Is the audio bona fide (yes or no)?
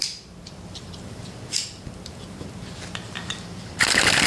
no